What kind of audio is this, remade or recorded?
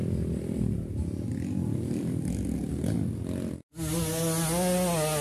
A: recorded